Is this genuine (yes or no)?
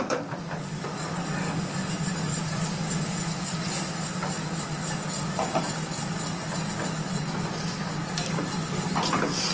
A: yes